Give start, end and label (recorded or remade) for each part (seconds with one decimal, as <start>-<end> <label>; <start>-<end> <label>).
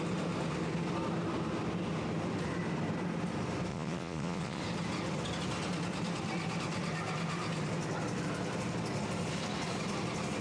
0.0-3.7 recorded; 3.7-4.6 remade; 4.6-10.4 recorded